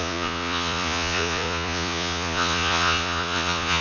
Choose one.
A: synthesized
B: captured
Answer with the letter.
A